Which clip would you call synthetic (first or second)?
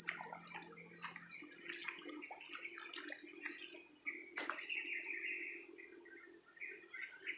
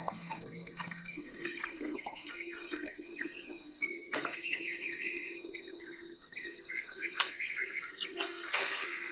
second